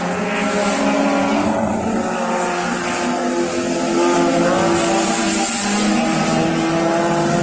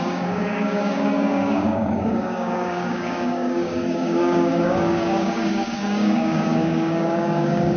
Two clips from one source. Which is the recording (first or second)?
first